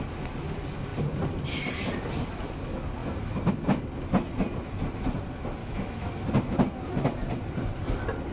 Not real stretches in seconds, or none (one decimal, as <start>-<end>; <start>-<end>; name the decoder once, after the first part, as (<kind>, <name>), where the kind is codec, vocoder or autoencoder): 5.6-6.1 (autoencoder, DAC-VAE)